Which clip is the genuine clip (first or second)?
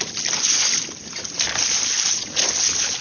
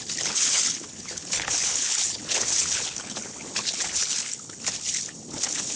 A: first